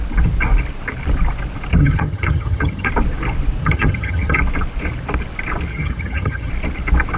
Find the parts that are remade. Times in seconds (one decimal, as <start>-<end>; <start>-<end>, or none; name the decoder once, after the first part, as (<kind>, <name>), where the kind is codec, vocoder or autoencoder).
1.8-2.9 (vocoder, HiFi-GAN); 3.6-4.4; 5.7-6.5